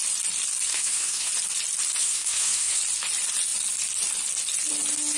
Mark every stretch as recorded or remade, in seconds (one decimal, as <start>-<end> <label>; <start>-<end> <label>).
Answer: 0.0-0.7 recorded; 0.7-1.3 remade; 1.3-2.0 recorded; 2.0-2.8 remade; 2.8-5.2 recorded